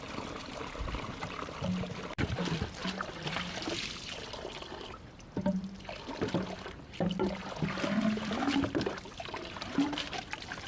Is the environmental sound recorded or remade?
remade